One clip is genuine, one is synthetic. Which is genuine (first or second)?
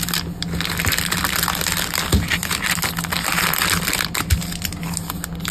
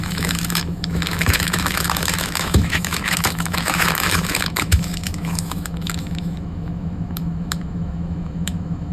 first